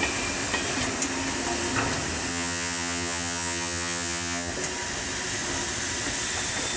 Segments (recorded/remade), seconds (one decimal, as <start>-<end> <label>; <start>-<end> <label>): 0.0-2.3 recorded; 2.3-4.5 remade; 4.5-6.8 recorded

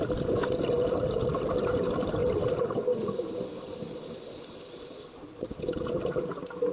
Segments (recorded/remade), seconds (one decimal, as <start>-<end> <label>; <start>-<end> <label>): 0.0-6.7 recorded

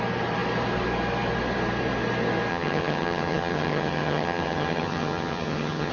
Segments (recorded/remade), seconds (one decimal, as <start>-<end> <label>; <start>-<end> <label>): 0.0-2.5 recorded; 2.5-5.9 remade

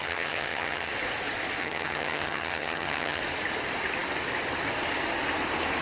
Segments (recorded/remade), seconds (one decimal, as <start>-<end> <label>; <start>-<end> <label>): 0.0-0.9 remade; 0.9-1.6 recorded; 1.6-3.2 remade; 3.2-5.8 recorded

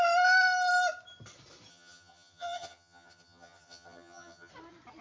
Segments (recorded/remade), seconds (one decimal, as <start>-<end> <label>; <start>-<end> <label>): 0.0-1.7 recorded; 1.7-4.5 remade; 4.5-5.0 recorded

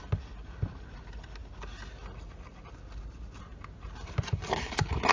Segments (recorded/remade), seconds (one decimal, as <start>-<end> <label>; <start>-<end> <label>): 0.0-5.1 recorded

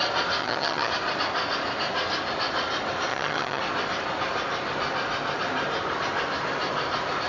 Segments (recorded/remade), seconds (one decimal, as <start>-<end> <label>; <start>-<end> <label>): 0.0-0.4 recorded; 0.4-0.9 remade; 0.9-3.1 recorded; 3.1-3.6 remade; 3.6-7.3 recorded

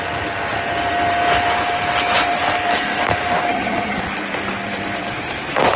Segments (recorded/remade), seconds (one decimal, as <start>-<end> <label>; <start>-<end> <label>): 0.0-3.5 recorded; 3.5-4.0 remade; 4.0-5.8 recorded